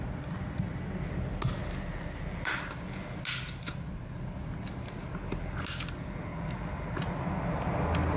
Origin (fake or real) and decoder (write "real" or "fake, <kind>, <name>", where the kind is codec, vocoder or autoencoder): real